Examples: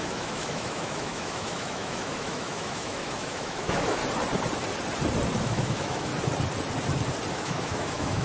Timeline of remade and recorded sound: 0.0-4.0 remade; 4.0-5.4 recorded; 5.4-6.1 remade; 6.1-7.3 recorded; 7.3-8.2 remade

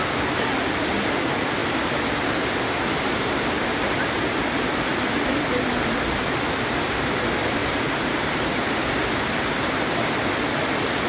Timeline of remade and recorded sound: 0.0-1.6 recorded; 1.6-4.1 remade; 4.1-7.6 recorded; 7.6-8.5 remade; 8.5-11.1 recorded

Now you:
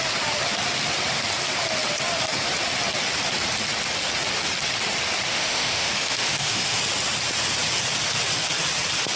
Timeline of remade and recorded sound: 0.0-5.3 recorded; 5.3-6.8 remade; 6.8-9.2 recorded

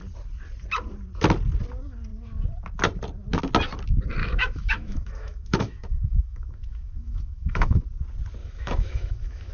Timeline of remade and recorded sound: 0.0-4.2 recorded; 4.2-7.8 remade; 7.8-8.4 recorded; 8.4-9.5 remade

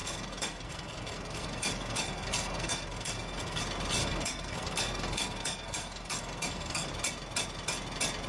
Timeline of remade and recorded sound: 0.0-3.6 remade; 3.6-4.0 recorded; 4.0-6.9 remade; 6.9-8.3 recorded